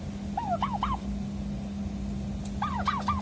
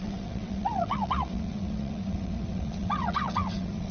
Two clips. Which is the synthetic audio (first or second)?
second